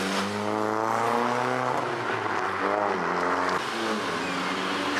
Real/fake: real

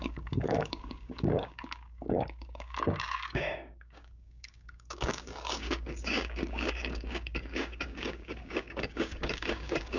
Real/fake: fake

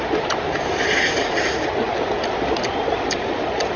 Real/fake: real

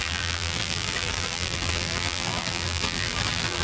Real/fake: fake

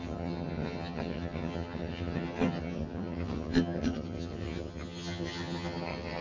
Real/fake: fake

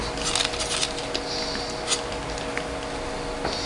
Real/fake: real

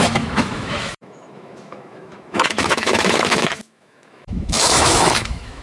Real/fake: fake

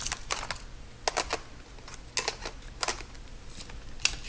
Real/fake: real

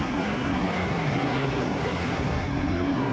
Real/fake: fake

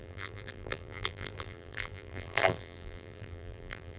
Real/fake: fake